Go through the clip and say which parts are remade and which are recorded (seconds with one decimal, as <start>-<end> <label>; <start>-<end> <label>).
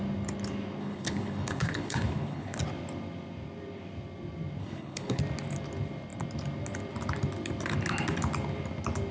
0.0-0.8 recorded; 0.8-2.6 remade; 2.6-4.6 recorded; 4.6-5.2 remade; 5.2-9.1 recorded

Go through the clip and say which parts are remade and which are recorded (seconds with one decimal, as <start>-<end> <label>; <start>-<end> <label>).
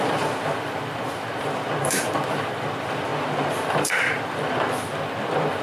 0.0-3.1 remade; 3.1-3.7 recorded; 3.7-5.6 remade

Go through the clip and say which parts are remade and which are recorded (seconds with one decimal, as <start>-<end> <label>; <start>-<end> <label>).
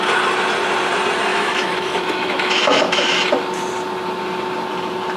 0.0-1.3 recorded; 1.3-3.1 remade; 3.1-5.2 recorded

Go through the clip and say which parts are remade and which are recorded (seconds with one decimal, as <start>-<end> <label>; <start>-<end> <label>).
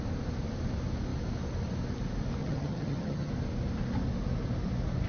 0.0-2.4 recorded; 2.4-3.3 remade; 3.3-5.1 recorded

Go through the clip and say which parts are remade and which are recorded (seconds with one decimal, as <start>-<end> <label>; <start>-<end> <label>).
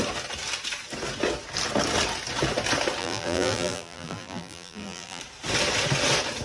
0.0-3.0 recorded; 3.0-5.2 remade; 5.2-6.4 recorded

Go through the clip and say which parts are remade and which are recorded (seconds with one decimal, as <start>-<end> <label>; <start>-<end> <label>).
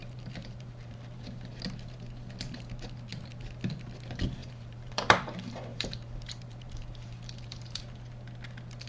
0.0-1.5 remade; 1.5-4.4 recorded; 4.4-7.8 remade; 7.8-8.9 recorded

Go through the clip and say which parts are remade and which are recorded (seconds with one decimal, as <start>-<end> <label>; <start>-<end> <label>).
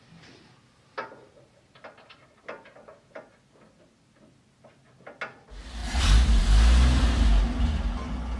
0.0-5.8 recorded; 5.8-6.4 remade; 6.4-8.4 recorded